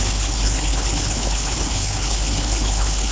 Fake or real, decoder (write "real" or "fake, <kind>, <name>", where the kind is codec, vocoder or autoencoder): fake, codec, HILCodec